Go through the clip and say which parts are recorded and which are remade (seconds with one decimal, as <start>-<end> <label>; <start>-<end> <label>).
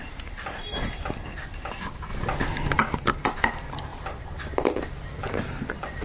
0.0-6.0 remade